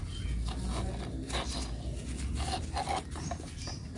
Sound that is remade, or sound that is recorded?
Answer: recorded